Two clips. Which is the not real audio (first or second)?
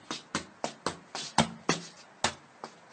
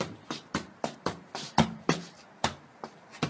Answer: second